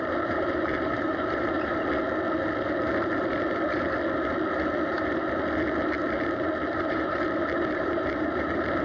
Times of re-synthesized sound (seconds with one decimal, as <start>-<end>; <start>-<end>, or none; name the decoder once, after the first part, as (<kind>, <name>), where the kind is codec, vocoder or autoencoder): 0.0-1.7 (vocoder, BigVGAN v2); 6.8-8.8